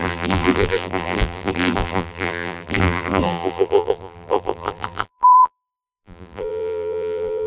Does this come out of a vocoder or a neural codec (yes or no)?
yes